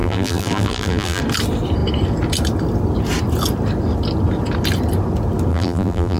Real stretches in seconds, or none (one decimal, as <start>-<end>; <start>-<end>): 1.2-5.5